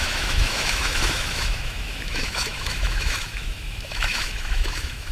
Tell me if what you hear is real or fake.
fake